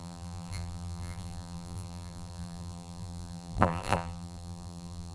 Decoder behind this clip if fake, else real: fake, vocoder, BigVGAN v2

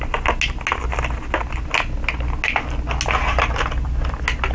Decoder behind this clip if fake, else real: real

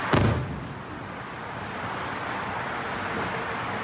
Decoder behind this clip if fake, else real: real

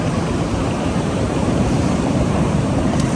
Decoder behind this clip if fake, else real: fake, vocoder, BigVGAN v2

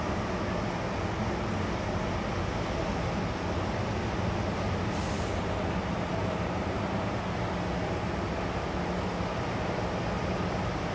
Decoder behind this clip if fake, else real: real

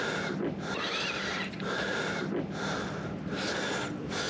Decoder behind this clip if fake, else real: real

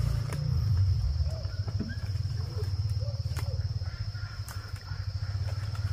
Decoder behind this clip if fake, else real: fake, vocoder, BigVGAN v2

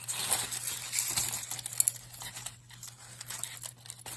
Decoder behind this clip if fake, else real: real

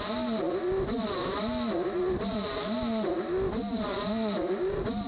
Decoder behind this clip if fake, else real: real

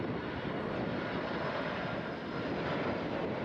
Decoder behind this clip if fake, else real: real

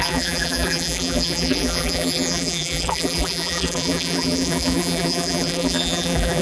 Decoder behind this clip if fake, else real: fake, vocoder, BigVGAN v2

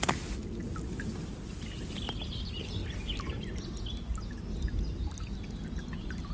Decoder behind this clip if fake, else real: real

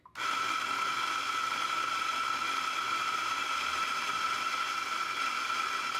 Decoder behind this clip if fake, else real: real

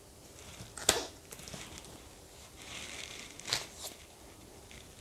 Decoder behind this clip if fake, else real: real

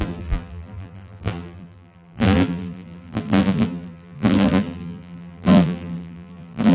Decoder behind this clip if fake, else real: fake, vocoder, BigVGAN v2